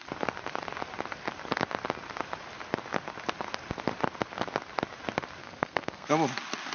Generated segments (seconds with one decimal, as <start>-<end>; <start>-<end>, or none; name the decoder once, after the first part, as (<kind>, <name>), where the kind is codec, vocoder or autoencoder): 5.4-6.1 (codec, SNAC)